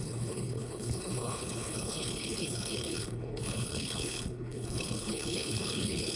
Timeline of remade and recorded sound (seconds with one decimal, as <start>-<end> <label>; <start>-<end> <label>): 0.0-6.2 remade